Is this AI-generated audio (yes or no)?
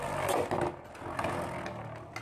no